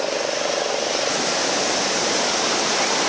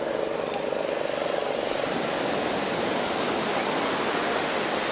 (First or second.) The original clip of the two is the second